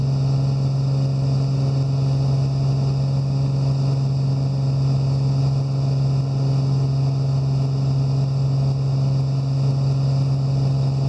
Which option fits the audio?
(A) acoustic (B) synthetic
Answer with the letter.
A